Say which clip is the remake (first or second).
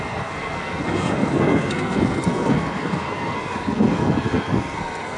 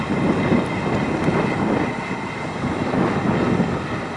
first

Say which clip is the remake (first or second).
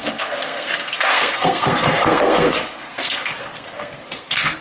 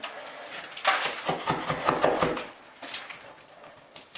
first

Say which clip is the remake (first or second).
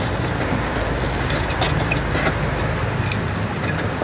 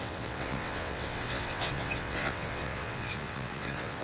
second